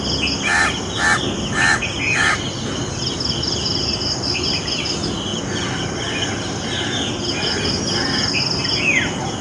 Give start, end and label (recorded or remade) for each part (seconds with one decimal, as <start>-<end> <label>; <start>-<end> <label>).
0.0-9.4 recorded